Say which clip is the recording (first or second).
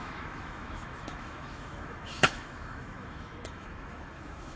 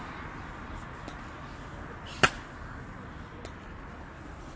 second